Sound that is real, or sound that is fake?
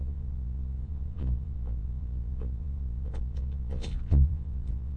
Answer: fake